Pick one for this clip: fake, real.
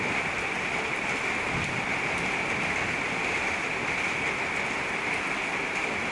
real